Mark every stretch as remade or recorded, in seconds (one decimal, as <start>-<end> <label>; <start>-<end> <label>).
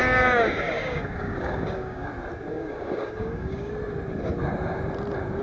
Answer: 0.0-2.1 remade; 2.1-2.5 recorded; 2.5-3.7 remade; 3.7-5.4 recorded